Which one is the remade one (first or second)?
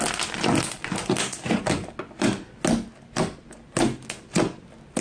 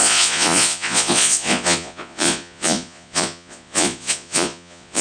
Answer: second